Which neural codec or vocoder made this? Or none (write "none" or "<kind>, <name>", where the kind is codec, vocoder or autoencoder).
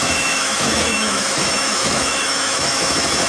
autoencoder, DAC-VAE